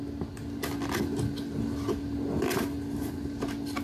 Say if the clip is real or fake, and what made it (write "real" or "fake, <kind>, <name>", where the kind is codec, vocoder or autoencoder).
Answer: real